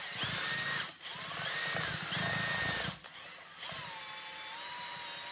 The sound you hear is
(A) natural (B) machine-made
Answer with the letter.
A